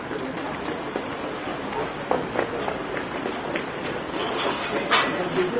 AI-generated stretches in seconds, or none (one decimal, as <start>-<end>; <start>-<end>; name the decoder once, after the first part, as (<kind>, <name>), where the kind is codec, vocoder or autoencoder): none